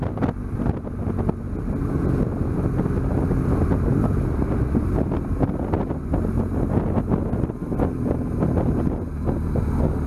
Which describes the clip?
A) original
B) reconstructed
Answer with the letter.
A